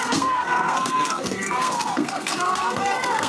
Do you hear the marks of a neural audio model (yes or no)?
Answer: yes